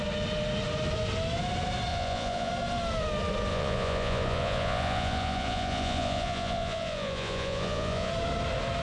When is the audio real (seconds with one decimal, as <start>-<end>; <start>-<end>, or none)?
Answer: 0.0-1.9; 2.5-3.5; 8.1-8.8

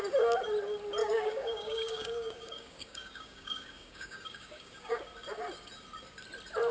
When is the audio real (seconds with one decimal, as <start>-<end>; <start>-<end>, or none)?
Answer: 0.0-1.0; 5.0-6.7